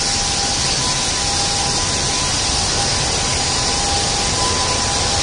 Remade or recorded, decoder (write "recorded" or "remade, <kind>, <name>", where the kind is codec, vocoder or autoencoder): recorded